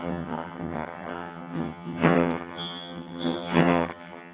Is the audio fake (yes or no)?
yes